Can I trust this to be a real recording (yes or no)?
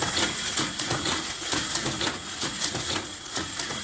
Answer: no